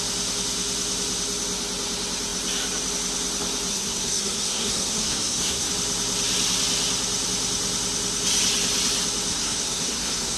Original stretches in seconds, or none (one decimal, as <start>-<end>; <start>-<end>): 0.0-3.7; 5.7-9.3

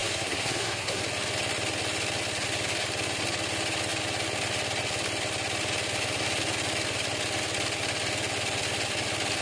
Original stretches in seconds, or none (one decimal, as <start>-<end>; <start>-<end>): 1.0-9.4

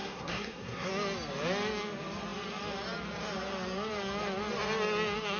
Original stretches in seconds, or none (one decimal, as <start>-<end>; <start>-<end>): 0.9-5.4

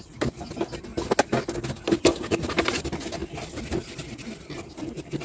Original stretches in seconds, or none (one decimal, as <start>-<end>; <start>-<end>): 0.0-5.2